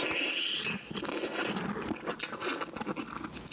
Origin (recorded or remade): recorded